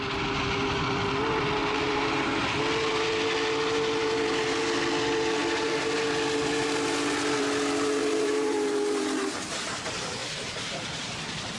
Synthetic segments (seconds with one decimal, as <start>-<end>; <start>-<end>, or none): 1.6-2.6; 8.0-9.3; 10.2-11.6